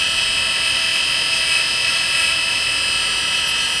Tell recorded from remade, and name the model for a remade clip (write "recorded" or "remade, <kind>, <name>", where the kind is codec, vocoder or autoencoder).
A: recorded